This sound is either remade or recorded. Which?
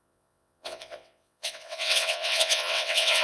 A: remade